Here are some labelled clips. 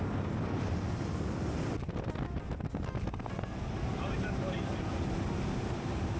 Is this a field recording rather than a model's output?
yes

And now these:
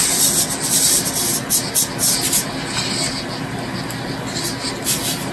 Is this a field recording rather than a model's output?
yes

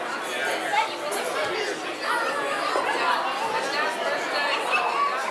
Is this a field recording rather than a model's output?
yes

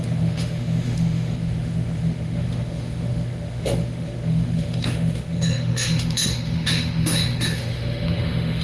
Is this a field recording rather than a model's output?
no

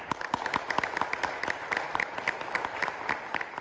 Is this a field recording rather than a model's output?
yes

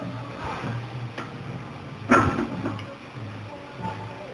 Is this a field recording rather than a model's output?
yes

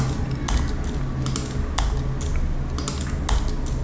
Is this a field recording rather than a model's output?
yes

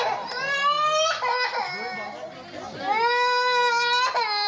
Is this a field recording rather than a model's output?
yes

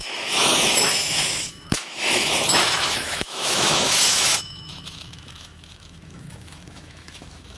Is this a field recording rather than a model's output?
no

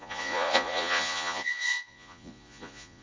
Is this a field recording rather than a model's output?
no